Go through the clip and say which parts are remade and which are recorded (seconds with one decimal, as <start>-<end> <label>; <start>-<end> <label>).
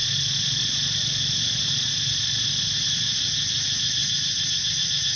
0.0-5.2 recorded